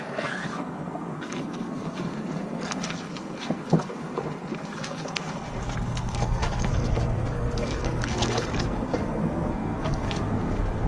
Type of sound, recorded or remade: remade